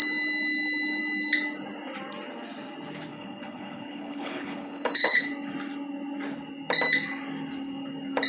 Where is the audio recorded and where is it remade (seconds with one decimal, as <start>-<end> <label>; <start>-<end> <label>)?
0.0-3.1 recorded; 3.1-5.3 remade; 5.3-8.3 recorded